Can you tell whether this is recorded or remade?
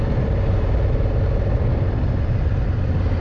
recorded